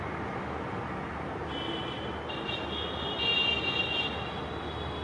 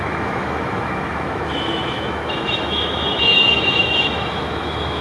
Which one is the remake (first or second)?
second